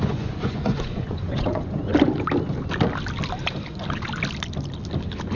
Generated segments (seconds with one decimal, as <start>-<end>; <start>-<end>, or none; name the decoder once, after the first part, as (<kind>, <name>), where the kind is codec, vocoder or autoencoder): 0.0-1.9 (vocoder, Vocos)